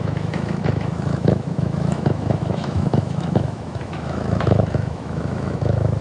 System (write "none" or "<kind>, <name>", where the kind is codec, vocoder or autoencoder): autoencoder, DAC-VAE